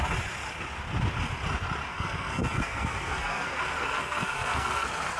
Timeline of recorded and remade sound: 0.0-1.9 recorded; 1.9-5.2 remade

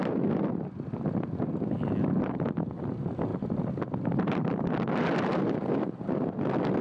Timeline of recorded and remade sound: 0.0-6.8 recorded